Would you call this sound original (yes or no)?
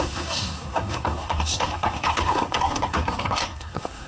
no